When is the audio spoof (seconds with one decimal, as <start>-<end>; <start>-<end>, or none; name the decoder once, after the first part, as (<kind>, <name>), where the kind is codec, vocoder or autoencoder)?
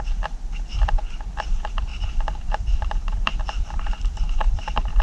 1.9-5.0 (vocoder, BigVGAN v2)